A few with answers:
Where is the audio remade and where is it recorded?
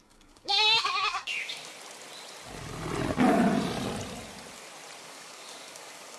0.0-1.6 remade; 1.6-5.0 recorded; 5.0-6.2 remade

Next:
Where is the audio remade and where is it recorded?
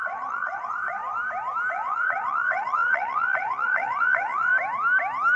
0.0-1.0 remade; 1.0-1.7 recorded; 1.7-4.5 remade; 4.5-5.4 recorded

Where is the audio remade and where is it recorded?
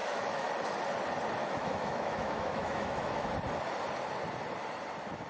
0.0-0.5 remade; 0.5-1.4 recorded; 1.4-3.3 remade; 3.3-5.3 recorded